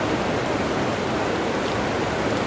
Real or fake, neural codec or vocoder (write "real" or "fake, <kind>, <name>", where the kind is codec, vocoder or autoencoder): real